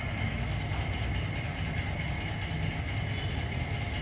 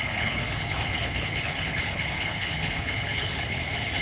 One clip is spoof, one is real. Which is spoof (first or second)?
second